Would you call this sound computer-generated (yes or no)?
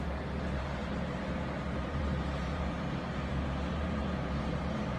yes